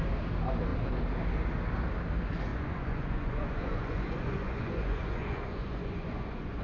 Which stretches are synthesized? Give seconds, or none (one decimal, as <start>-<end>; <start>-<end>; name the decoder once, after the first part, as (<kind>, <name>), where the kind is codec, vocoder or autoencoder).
2.5-6.6 (vocoder, Vocos)